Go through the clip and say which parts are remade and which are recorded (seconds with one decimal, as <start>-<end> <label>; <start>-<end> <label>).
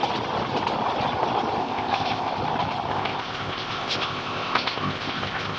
0.0-1.6 recorded; 1.6-2.3 remade; 2.3-2.9 recorded; 2.9-5.6 remade